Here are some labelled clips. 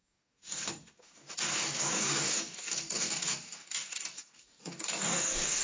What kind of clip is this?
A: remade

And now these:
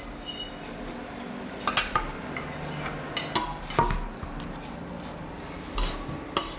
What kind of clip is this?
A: recorded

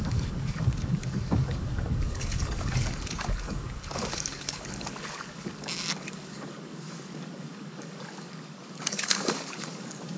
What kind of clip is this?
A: remade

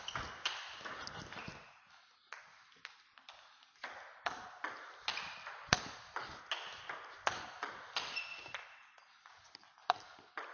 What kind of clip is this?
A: recorded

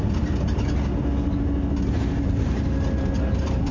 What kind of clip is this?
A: recorded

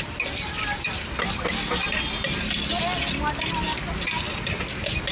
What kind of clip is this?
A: recorded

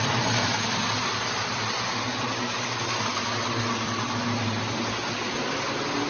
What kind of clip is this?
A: recorded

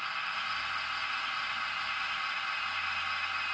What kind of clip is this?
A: recorded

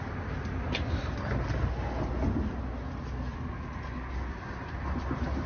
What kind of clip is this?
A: recorded